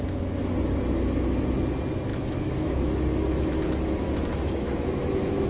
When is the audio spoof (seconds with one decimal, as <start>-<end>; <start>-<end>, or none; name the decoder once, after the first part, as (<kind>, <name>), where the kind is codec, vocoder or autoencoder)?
2.1-5.5 (autoencoder, DAC-VAE)